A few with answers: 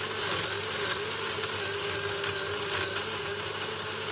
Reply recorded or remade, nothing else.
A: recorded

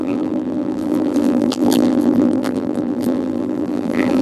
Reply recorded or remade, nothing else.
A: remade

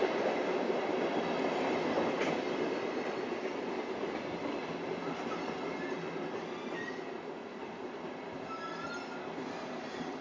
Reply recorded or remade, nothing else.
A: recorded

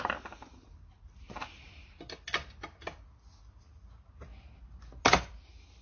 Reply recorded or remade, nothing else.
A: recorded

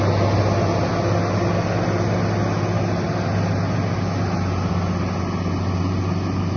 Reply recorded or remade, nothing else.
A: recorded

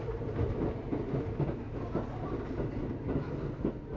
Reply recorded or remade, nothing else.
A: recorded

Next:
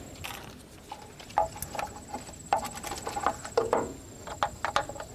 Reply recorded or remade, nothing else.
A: recorded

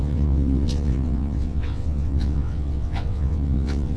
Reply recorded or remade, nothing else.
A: remade